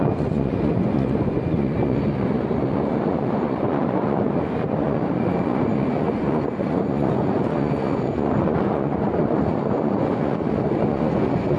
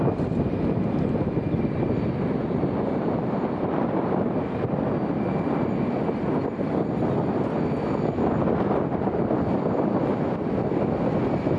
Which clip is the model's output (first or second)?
first